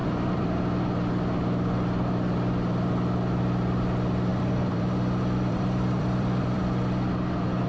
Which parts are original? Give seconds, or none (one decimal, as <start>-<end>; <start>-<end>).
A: 0.6-4.3; 6.6-7.7